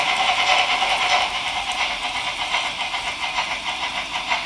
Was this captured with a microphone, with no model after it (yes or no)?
no